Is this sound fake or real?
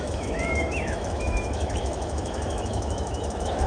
fake